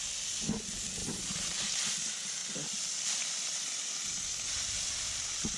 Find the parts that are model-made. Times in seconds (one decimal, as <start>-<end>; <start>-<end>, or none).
1.0-1.8